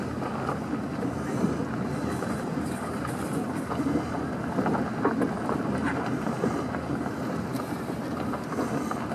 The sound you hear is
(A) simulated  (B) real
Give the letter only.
B